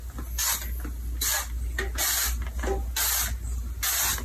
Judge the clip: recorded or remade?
recorded